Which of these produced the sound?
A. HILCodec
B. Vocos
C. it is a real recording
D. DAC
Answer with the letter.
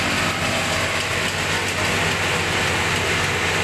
C